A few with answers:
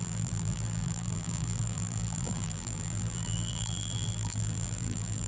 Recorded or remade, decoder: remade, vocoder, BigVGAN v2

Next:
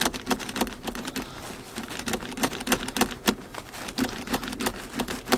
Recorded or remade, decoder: recorded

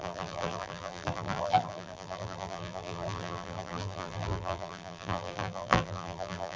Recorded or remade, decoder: remade, vocoder, BigVGAN v2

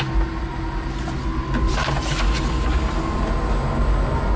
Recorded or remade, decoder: recorded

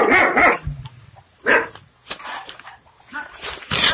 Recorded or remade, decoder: remade, vocoder, BigVGAN v2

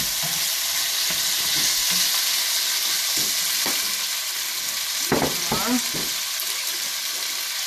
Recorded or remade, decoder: recorded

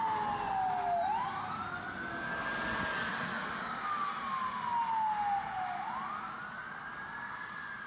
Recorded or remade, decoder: recorded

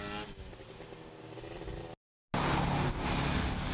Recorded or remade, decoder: recorded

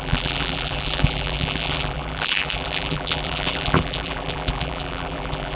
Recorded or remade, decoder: remade, vocoder, BigVGAN v2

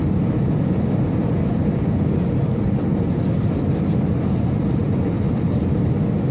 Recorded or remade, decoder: remade, vocoder, BigVGAN v2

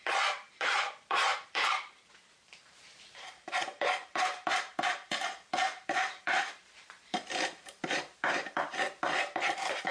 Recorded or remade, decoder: remade, vocoder, BigVGAN v2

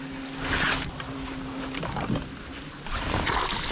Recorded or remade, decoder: recorded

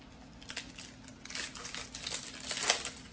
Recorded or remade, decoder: recorded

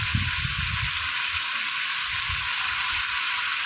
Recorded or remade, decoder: recorded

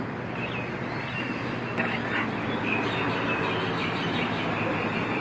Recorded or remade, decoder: recorded